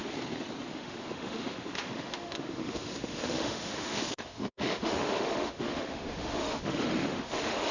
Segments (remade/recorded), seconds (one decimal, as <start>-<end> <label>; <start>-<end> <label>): 0.0-0.7 recorded; 0.7-7.7 remade